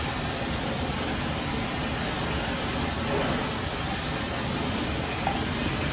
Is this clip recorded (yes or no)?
yes